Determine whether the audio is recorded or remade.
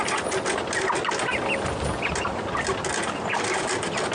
recorded